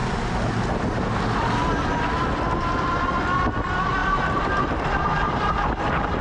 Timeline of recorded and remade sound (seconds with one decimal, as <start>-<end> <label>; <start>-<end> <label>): 0.0-4.0 recorded; 4.0-5.8 remade; 5.8-6.2 recorded